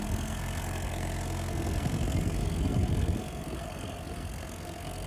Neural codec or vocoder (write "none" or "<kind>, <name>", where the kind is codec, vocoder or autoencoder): codec, SNAC